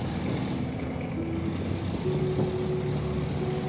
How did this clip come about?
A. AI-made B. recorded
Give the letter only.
B